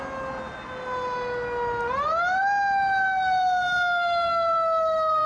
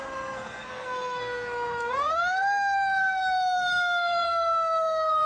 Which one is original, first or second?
first